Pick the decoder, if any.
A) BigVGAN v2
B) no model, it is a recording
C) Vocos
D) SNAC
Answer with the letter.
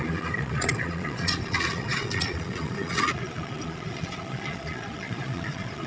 C